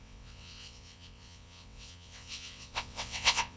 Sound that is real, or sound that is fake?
fake